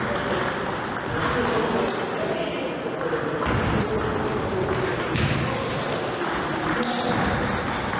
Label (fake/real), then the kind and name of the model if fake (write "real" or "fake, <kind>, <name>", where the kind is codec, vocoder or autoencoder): real